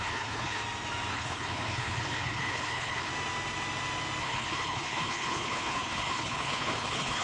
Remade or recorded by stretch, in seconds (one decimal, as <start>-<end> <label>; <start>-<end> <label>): 0.0-0.6 remade; 0.6-1.1 recorded; 1.1-3.1 remade; 3.1-4.2 recorded; 4.2-7.2 remade